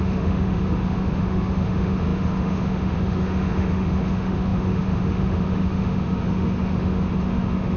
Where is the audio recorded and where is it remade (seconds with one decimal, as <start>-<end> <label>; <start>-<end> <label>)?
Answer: 0.0-7.8 remade